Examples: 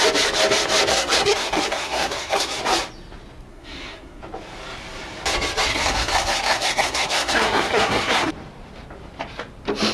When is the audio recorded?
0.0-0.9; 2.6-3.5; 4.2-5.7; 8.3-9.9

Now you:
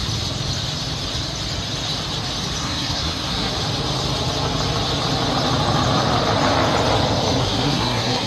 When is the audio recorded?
0.0-2.6; 3.5-7.4

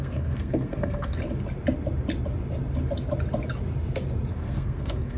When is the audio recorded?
1.2-4.3

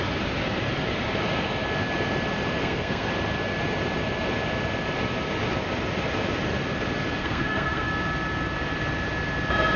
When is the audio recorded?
0.0-2.6; 3.1-7.2; 7.9-9.8

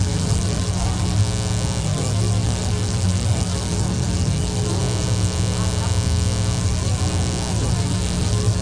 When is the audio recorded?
1.2-1.8; 4.8-6.6; 7.0-7.5

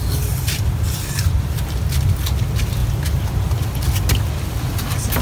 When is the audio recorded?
0.0-5.2

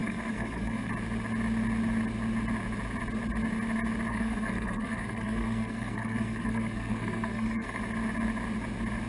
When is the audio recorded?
0.9-4.1; 7.8-9.1